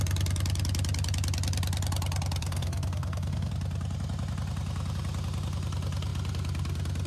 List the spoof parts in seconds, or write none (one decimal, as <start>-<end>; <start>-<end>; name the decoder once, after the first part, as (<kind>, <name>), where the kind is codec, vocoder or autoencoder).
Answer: 2.4-3.5 (codec, SNAC)